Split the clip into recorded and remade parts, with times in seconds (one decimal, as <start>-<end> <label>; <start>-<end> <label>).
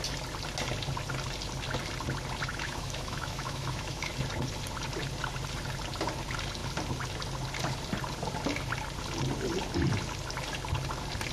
0.0-2.5 recorded; 2.5-4.1 remade; 4.1-11.3 recorded